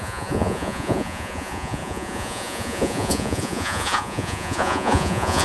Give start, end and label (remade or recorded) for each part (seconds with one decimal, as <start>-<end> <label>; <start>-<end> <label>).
0.0-5.4 remade